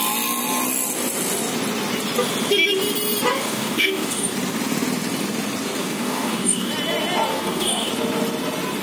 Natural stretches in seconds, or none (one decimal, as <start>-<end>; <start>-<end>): 0.0-3.3; 4.3-5.8; 6.7-7.3; 7.9-8.8